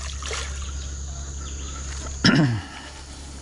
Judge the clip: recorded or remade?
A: recorded